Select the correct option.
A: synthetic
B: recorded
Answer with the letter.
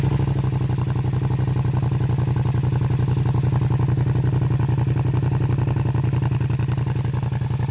B